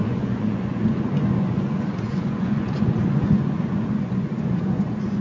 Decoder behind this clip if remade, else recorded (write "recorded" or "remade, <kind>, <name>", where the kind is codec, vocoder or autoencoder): remade, vocoder, Vocos